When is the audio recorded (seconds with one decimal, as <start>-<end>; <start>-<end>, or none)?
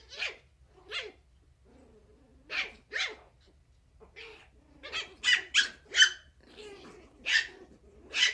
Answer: 0.0-8.3